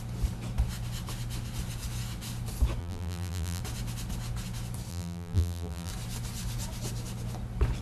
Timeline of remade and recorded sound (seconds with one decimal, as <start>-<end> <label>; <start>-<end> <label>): 0.0-2.8 recorded; 2.8-3.6 remade; 3.6-4.9 recorded; 4.9-5.9 remade; 5.9-7.8 recorded